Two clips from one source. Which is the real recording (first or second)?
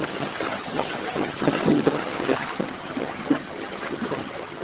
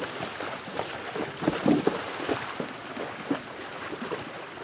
second